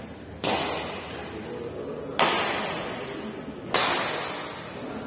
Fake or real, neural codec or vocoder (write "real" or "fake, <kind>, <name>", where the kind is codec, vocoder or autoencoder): real